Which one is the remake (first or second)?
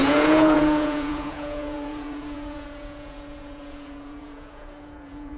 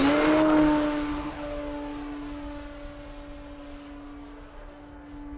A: first